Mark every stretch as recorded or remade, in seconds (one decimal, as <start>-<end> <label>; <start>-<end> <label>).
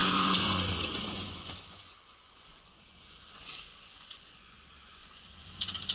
0.0-5.9 remade